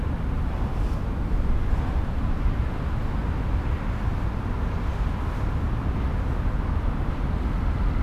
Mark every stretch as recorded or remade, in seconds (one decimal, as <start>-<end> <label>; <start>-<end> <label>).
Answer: 0.0-8.0 recorded